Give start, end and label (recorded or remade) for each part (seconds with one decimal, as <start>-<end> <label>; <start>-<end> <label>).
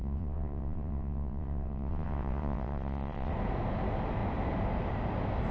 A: 0.0-3.3 remade; 3.3-5.5 recorded